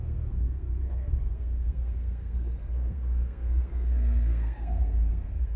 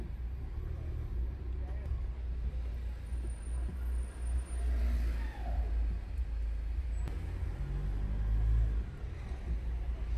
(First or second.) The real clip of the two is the second